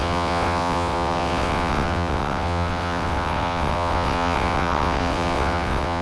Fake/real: fake